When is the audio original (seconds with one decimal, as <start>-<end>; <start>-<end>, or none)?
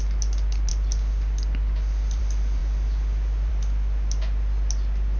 0.0-5.2